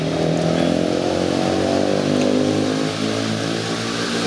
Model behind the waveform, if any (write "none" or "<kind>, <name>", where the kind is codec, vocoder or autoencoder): none